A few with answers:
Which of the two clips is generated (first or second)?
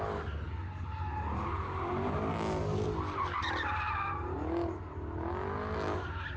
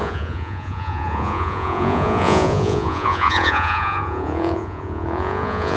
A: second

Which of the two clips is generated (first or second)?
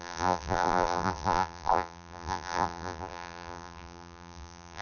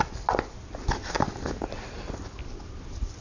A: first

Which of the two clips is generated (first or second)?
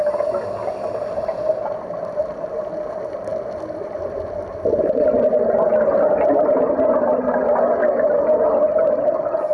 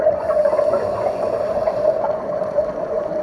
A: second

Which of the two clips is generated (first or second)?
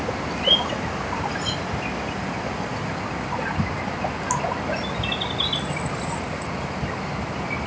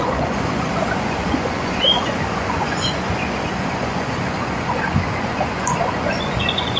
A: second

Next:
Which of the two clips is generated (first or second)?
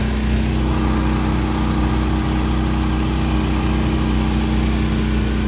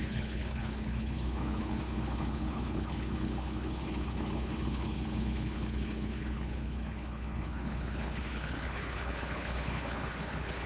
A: second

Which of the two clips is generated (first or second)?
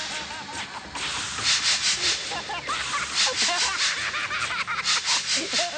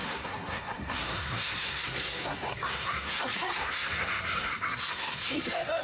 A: second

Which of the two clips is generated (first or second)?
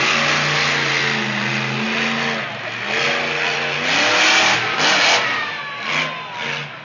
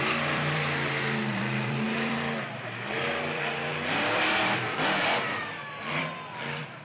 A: second